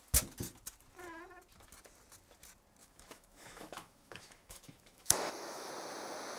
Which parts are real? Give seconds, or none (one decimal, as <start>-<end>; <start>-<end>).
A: 0.0-2.8; 5.7-6.4